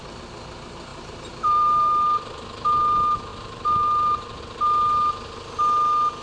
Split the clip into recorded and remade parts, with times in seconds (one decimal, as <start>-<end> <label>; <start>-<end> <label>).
0.0-0.9 recorded; 0.9-1.9 remade; 1.9-3.3 recorded; 3.3-4.4 remade; 4.4-6.2 recorded